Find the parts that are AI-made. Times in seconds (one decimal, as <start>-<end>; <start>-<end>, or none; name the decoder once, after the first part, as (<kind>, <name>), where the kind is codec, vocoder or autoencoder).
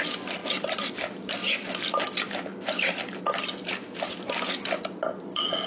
none